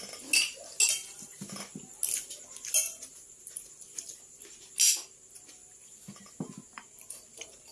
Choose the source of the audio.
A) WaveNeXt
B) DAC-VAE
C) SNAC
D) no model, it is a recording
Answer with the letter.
D